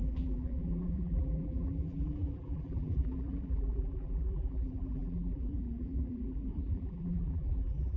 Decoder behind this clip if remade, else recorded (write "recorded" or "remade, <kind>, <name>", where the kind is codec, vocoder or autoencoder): remade, vocoder, BigVGAN v2